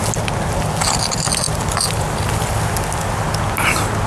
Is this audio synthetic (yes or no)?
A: no